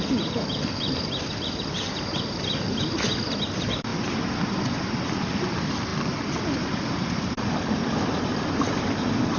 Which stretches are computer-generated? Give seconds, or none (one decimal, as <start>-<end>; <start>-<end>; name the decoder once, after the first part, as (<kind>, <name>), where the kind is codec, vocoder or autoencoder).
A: none